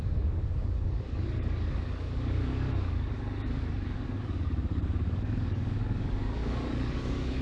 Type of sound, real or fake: fake